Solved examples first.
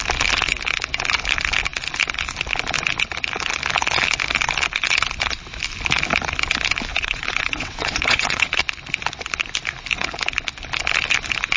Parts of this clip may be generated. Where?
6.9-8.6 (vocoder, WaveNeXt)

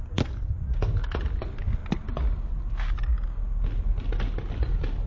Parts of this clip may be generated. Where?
none

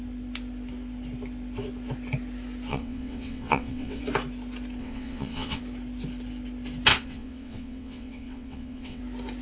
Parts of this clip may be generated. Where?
2.7-4.0 (vocoder, WaveNeXt); 4.8-5.6; 6.9-9.0

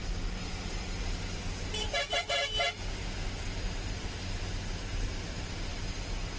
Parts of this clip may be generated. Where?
none